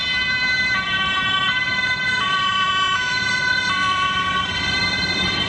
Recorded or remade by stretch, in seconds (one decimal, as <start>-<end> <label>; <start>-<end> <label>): 0.0-5.5 remade